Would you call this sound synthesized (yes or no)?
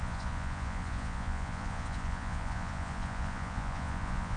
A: yes